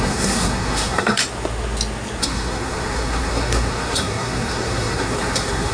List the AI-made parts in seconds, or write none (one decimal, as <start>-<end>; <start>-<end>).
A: 0.0-1.2; 2.2-5.7